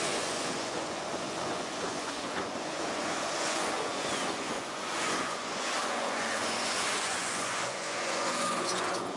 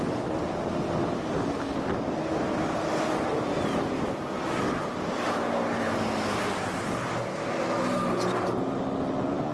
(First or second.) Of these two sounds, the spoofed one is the first